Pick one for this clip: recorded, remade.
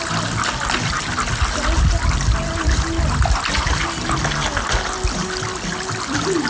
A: recorded